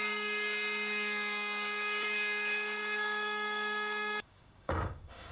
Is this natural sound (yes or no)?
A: no